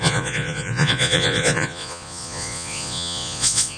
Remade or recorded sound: remade